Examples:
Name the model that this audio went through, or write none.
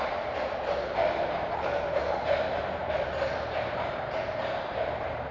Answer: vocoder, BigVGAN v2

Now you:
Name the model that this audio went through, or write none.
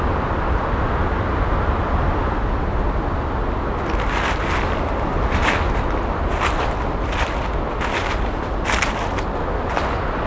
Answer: none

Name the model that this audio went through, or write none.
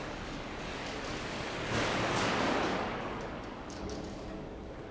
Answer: codec, DAC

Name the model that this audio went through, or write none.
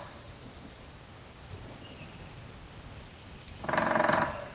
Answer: none